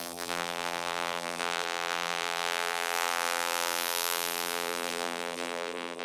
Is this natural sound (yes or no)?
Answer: no